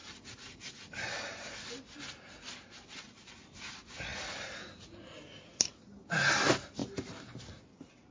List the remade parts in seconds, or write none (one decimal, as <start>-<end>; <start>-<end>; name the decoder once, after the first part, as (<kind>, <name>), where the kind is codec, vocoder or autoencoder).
none